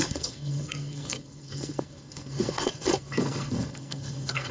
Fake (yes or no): yes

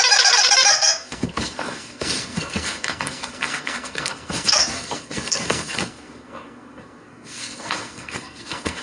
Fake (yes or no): yes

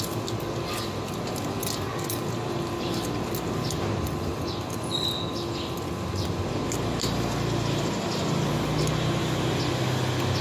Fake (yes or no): no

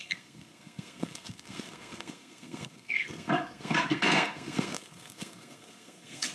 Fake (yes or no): yes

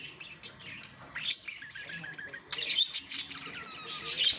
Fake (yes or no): no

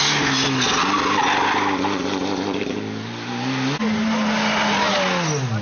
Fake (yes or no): no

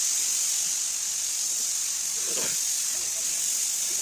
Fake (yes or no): no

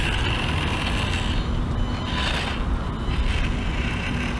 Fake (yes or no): no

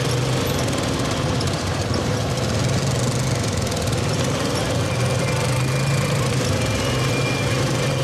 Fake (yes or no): no